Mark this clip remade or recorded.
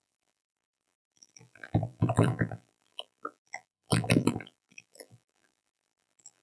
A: remade